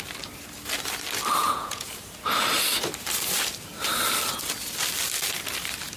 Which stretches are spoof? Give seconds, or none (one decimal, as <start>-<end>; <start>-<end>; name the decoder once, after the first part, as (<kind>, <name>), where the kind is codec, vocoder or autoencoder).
1.4-1.9 (vocoder, Vocos)